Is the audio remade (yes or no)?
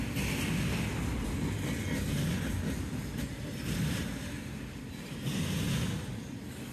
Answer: no